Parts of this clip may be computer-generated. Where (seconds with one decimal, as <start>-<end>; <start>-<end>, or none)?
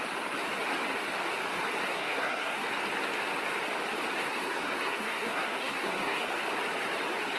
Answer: 1.9-2.6; 4.2-6.3